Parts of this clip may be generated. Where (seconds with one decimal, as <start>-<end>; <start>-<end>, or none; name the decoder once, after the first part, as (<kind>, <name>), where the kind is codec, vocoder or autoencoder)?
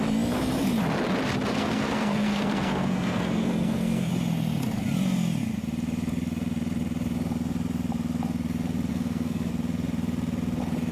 1.5-4.1 (codec, SNAC); 8.9-9.5